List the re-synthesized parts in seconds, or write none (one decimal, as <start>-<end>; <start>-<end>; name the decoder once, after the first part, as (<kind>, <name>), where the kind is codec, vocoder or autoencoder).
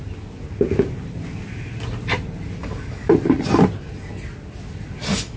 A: 2.6-3.1 (codec, DAC)